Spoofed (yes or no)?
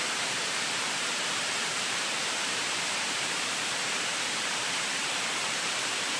yes